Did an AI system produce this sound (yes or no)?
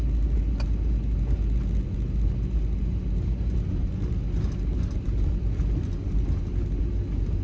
no